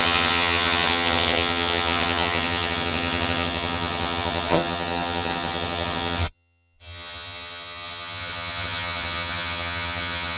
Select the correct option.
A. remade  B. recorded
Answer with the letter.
A